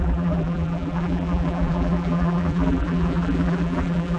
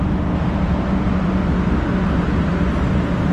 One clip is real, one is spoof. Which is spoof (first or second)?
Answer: first